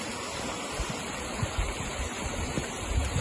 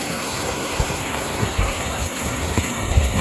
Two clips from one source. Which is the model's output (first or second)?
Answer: second